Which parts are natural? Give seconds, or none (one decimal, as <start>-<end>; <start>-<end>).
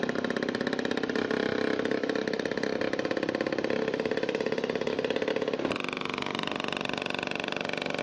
0.0-8.0